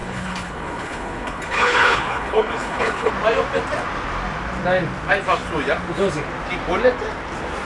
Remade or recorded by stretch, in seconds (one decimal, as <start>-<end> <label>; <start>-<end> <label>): 0.0-3.1 remade; 3.1-7.6 recorded